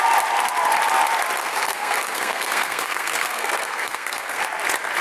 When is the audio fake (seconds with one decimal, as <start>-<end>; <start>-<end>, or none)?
1.4-4.4